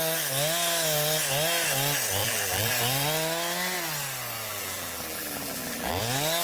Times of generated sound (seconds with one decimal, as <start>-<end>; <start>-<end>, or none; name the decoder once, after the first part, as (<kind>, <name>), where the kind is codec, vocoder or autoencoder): 2.2-2.7 (vocoder, BigVGAN v2); 4.5-6.0